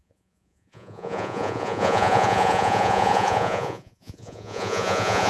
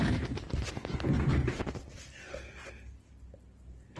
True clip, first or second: second